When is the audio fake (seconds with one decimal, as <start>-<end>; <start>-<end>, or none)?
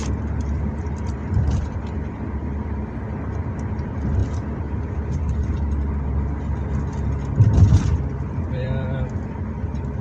7.9-9.2